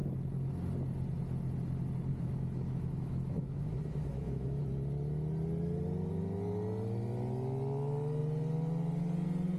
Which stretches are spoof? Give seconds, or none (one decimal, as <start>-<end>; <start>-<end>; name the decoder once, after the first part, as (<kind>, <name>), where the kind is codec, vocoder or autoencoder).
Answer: 2.1-4.6 (autoencoder, DAC-VAE)